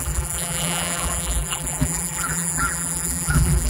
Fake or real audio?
fake